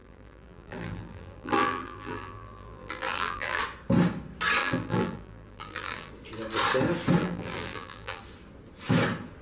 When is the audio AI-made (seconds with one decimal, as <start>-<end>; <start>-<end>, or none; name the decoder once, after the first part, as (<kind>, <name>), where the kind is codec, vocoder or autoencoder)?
0.0-3.6 (vocoder, BigVGAN v2); 4.6-6.1; 7.2-8.2